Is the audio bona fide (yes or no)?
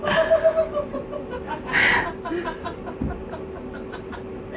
yes